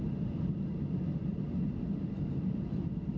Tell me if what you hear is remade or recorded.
recorded